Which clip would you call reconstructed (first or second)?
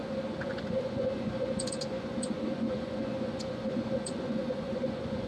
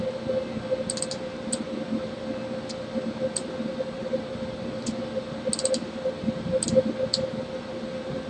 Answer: first